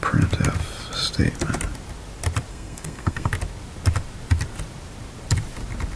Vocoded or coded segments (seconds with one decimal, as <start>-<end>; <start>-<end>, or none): 2.5-3.3